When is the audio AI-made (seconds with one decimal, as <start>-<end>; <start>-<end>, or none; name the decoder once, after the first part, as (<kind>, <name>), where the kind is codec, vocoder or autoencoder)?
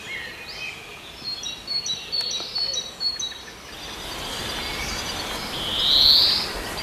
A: 0.9-4.4 (vocoder, BigVGAN v2)